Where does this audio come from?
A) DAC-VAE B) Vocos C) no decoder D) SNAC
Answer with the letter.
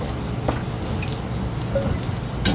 C